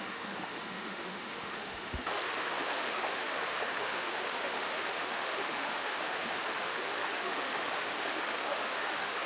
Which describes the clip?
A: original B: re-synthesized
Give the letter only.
B